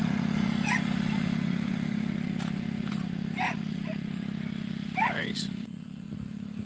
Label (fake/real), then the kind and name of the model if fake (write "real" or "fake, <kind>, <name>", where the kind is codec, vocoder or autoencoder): fake, vocoder, Vocos